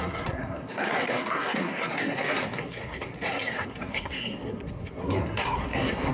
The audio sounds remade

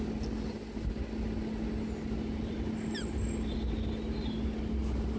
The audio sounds recorded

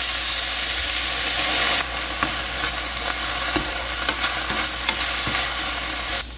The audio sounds recorded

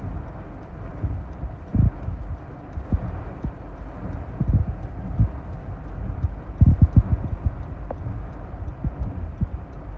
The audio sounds recorded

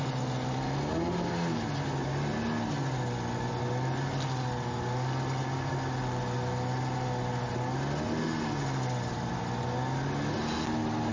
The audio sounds recorded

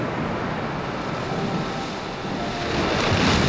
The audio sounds recorded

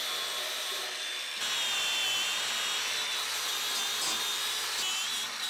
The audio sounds remade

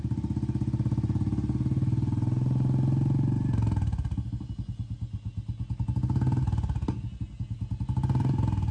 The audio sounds recorded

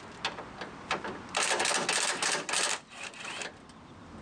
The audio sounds recorded